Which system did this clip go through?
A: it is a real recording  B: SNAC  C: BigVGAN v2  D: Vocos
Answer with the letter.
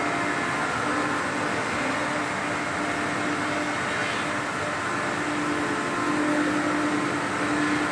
A